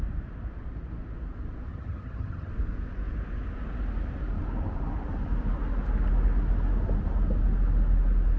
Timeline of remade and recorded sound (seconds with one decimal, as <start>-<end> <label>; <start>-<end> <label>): 0.0-1.7 recorded; 1.7-2.5 remade; 2.5-8.4 recorded